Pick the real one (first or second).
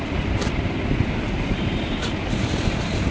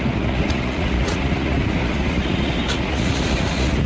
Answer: first